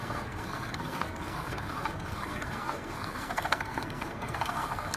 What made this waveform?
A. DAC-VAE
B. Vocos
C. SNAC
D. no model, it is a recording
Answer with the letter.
C